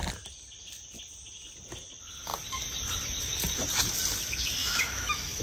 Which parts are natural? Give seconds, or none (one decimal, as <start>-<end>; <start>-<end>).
0.0-4.6